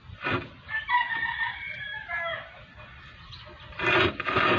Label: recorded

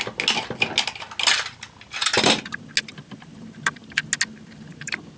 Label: recorded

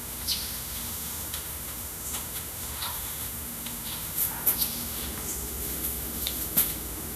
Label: remade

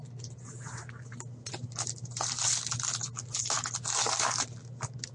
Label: recorded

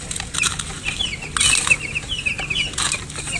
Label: recorded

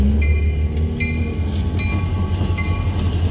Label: recorded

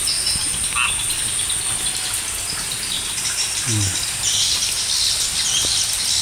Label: recorded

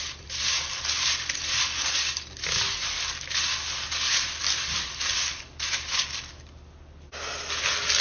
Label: recorded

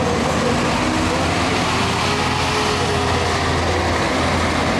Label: recorded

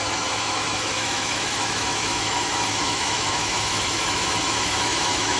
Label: remade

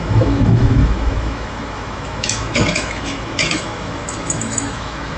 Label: remade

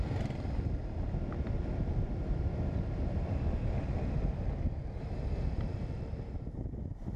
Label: recorded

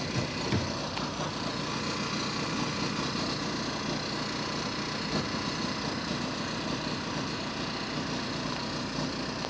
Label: recorded